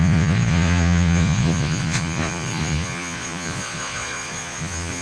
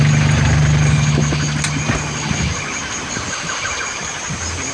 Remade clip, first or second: first